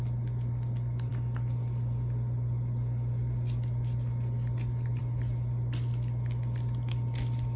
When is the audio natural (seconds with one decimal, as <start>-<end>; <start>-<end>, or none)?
0.0-7.6

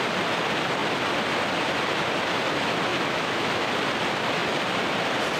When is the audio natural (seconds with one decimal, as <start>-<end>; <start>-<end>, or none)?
0.0-2.9; 3.7-5.4

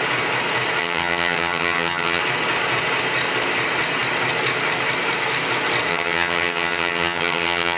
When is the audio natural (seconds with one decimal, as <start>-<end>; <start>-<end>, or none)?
0.0-0.8; 2.2-5.9